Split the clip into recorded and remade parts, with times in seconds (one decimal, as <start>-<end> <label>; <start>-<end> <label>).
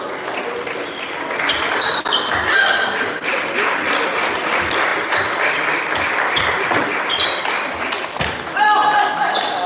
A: 0.0-9.7 recorded